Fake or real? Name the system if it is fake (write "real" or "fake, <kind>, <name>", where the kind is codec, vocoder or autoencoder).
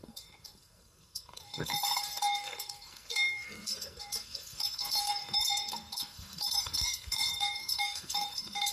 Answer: fake, codec, SNAC